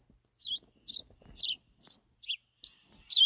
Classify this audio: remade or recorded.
recorded